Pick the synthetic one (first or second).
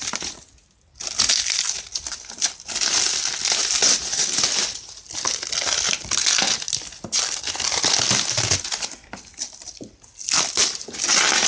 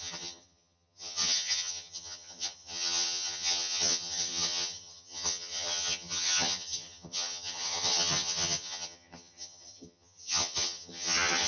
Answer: second